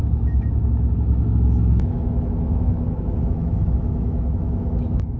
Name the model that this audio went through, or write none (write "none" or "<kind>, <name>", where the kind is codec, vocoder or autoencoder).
autoencoder, DAC-VAE